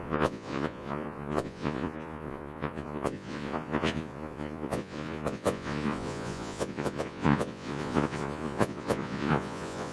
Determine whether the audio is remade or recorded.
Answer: remade